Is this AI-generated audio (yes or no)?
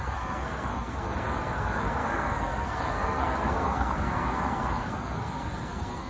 yes